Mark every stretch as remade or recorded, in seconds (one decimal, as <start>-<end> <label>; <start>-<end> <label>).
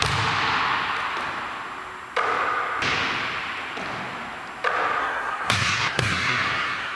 0.0-5.0 recorded; 5.0-7.0 remade